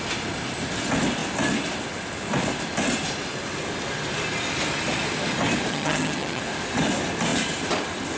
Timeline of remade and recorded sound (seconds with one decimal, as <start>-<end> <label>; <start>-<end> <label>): 0.0-5.7 recorded; 5.7-6.4 remade; 6.4-8.2 recorded